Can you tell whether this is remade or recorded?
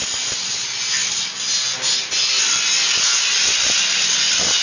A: recorded